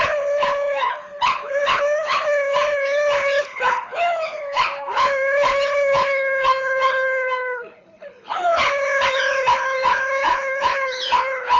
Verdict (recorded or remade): remade